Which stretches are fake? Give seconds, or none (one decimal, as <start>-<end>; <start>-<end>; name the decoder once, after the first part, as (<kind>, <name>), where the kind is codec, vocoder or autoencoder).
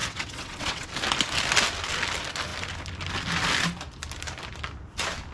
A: 0.0-0.9 (vocoder, WaveNeXt)